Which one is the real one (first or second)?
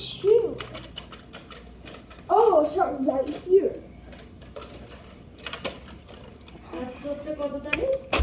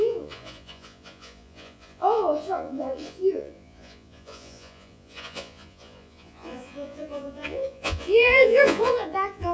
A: first